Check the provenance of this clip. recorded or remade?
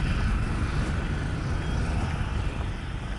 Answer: recorded